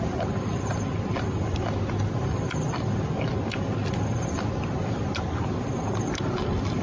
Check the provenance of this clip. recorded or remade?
recorded